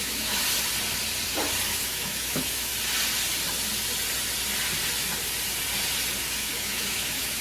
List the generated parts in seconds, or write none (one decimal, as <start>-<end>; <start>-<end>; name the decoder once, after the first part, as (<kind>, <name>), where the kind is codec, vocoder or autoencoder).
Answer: 0.0-0.4 (autoencoder, DAC-VAE); 1.7-2.7; 6.2-7.4